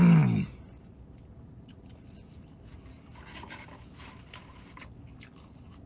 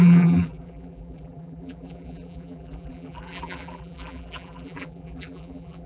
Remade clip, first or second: second